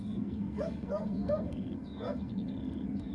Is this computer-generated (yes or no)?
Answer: yes